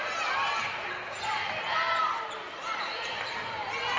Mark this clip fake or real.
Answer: real